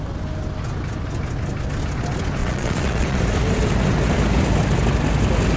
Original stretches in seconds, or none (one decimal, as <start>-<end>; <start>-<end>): 0.0-2.4; 3.2-5.6